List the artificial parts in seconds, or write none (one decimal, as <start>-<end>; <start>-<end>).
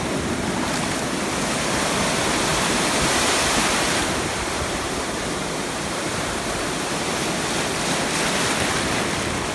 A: 2.5-7.1